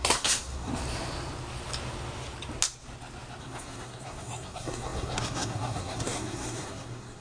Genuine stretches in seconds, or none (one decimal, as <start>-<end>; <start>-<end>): 0.7-3.4